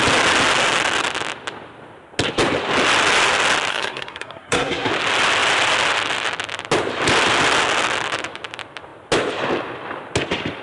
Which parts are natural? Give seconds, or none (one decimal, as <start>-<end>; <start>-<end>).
0.0-3.7; 4.9-10.6